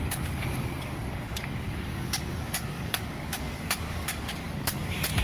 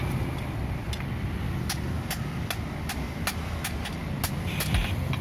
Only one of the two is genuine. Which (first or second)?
second